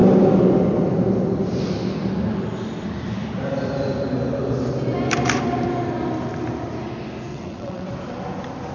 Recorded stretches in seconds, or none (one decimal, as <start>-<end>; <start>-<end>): 0.0-7.3; 7.9-8.7